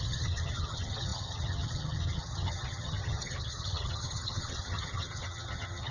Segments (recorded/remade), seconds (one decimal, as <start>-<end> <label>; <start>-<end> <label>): 0.0-5.9 remade